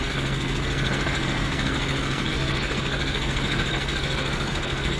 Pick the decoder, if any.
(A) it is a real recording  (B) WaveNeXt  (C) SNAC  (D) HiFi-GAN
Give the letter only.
C